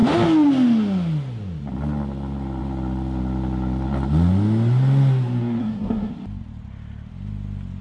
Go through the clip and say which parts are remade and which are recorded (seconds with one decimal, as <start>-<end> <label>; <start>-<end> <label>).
0.0-5.6 recorded; 5.6-6.1 remade; 6.1-7.8 recorded